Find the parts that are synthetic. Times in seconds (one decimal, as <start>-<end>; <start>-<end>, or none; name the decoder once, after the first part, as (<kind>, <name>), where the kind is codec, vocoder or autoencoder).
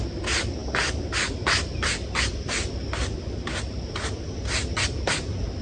none